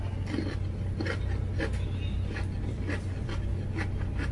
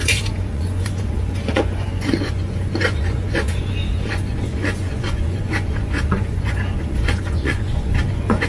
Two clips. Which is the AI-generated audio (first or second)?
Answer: second